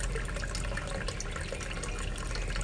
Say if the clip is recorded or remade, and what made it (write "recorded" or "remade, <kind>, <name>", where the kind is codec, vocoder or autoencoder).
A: recorded